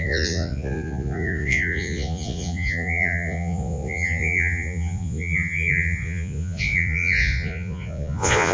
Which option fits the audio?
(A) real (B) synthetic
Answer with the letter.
B